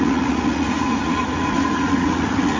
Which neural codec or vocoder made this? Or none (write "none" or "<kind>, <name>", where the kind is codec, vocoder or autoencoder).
vocoder, Vocos